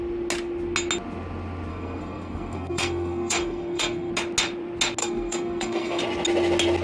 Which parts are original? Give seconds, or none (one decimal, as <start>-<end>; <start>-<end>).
0.0-1.7; 4.1-5.0; 6.0-6.8

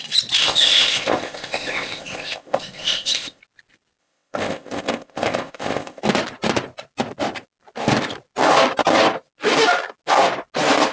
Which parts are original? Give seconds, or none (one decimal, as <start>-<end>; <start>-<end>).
0.0-0.4; 3.4-4.0; 6.0-10.9

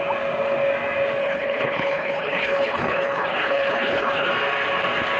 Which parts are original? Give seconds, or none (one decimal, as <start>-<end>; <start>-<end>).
0.0-1.2; 4.3-5.2